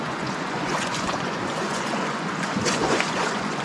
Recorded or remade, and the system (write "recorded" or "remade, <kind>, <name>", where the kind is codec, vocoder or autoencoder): remade, vocoder, Vocos